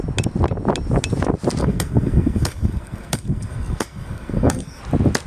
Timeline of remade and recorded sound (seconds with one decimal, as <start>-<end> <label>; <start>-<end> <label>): 0.0-1.6 recorded; 1.6-4.8 remade; 4.8-5.3 recorded